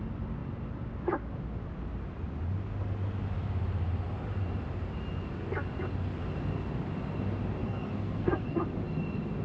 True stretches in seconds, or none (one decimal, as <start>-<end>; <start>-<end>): 0.0-7.6; 8.6-9.4